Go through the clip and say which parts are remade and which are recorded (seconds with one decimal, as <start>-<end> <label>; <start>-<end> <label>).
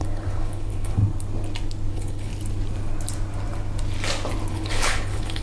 0.0-1.0 remade; 1.0-1.9 recorded; 1.9-2.3 remade; 2.3-4.5 recorded; 4.5-5.4 remade